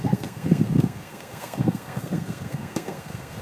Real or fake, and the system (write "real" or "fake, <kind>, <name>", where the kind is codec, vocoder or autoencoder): fake, codec, SNAC